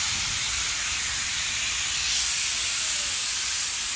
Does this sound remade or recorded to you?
recorded